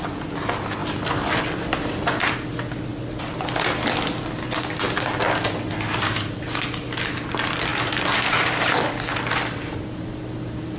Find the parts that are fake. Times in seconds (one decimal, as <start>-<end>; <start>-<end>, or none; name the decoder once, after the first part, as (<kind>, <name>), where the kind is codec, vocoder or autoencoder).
none